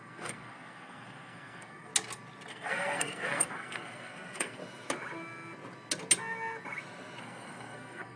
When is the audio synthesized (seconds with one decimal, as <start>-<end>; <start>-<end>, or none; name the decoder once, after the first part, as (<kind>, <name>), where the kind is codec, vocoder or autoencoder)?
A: 0.0-1.9 (codec, SNAC); 2.5-4.6; 7.2-8.2